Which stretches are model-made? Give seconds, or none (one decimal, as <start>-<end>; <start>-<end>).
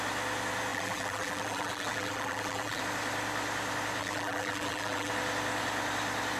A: 0.7-2.8; 4.0-5.1